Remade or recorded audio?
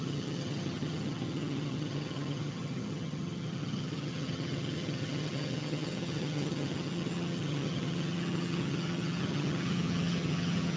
remade